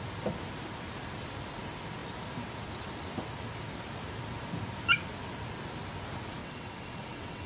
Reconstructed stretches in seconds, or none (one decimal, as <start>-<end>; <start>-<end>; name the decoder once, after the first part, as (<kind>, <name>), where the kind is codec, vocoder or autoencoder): 6.4-7.5 (vocoder, WaveNeXt)